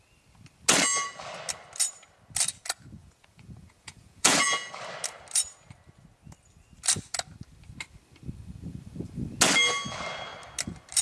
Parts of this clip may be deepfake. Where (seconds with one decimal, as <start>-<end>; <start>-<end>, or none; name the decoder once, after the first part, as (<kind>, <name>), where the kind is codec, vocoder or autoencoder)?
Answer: 3.0-4.7 (vocoder, Vocos)